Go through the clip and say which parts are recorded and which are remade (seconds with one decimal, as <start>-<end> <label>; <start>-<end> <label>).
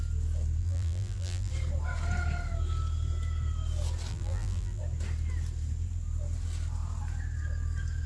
0.0-0.6 recorded; 0.6-1.5 remade; 1.5-4.1 recorded; 4.1-4.8 remade; 4.8-8.1 recorded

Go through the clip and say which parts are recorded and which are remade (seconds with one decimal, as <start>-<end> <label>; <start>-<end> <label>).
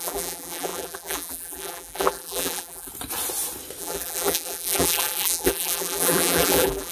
0.0-2.9 remade; 2.9-3.8 recorded; 3.8-6.9 remade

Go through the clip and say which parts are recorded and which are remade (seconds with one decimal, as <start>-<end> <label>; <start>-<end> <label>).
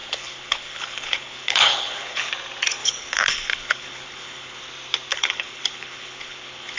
0.0-2.3 remade; 2.3-2.8 recorded; 2.8-4.6 remade; 4.6-5.1 recorded; 5.1-6.8 remade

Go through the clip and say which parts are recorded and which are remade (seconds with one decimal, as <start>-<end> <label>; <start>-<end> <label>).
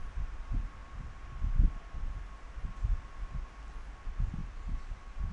0.0-0.8 recorded; 0.8-2.6 remade; 2.6-4.4 recorded; 4.4-5.3 remade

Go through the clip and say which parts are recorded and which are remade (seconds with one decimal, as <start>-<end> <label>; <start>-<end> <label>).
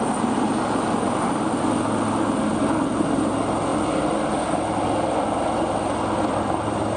0.0-7.0 recorded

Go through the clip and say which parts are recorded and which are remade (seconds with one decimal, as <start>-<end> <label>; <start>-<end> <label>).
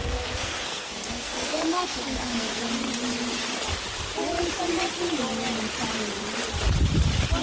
0.0-2.6 remade; 2.6-7.4 recorded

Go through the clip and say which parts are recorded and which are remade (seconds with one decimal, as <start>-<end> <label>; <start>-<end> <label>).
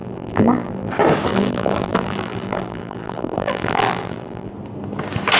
0.0-0.9 remade; 0.9-1.3 recorded; 1.3-4.5 remade; 4.5-5.4 recorded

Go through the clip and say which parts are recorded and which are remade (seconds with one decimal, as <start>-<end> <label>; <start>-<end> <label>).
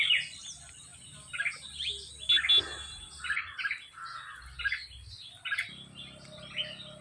0.0-7.0 recorded